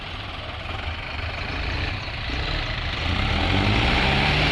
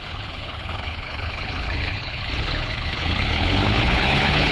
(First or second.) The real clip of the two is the first